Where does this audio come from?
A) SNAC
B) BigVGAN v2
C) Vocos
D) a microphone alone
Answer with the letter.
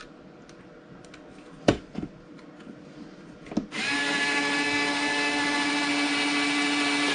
D